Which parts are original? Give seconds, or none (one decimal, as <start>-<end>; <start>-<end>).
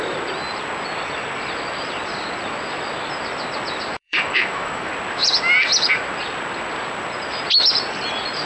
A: 0.0-3.9; 4.9-8.5